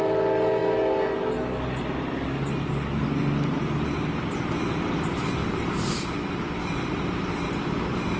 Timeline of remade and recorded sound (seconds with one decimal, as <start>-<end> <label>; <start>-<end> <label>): 0.0-5.4 recorded; 5.4-8.2 remade